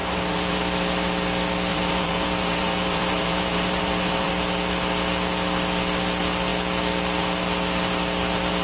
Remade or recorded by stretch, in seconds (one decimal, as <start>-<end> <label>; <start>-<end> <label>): 0.0-0.6 remade; 0.6-1.7 recorded; 1.7-4.3 remade; 4.3-8.6 recorded